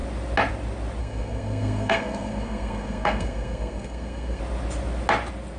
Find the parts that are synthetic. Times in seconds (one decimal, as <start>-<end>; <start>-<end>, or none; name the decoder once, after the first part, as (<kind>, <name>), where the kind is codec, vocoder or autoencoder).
1.0-4.4 (codec, SNAC)